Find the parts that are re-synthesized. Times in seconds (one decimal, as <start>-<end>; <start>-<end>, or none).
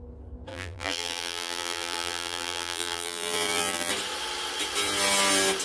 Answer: 0.5-3.9